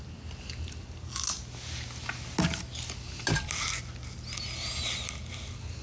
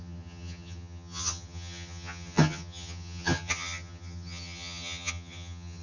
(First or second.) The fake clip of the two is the second